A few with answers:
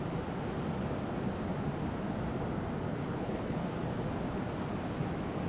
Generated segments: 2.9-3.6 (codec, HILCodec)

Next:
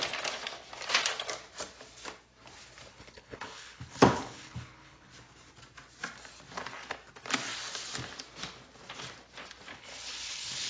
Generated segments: 2.9-5.1 (codec, HILCodec); 9.7-10.7